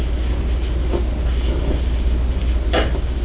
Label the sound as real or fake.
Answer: real